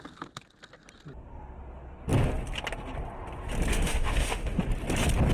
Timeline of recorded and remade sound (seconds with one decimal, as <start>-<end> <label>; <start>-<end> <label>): 0.0-3.7 recorded; 3.7-4.6 remade; 4.6-5.3 recorded